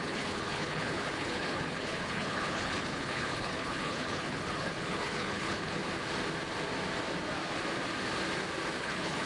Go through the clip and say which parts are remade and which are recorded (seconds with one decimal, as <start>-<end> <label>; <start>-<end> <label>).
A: 0.0-5.8 remade; 5.8-8.8 recorded; 8.8-9.3 remade